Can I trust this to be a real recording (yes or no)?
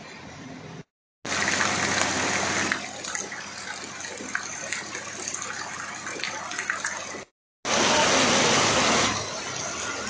yes